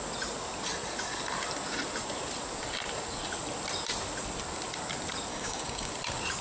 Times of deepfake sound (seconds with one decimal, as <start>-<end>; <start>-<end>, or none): 5.3-5.9